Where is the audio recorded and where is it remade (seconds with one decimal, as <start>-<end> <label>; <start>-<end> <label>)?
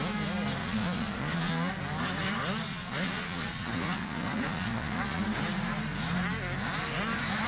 0.0-0.6 recorded; 0.6-1.7 remade; 1.7-2.7 recorded; 2.7-5.2 remade; 5.2-7.5 recorded